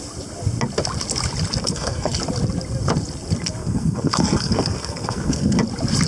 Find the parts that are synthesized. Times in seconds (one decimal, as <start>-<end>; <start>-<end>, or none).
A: 1.6-2.2; 3.6-5.6